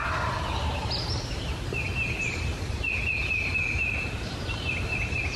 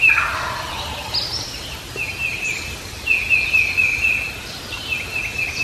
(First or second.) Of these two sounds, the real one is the second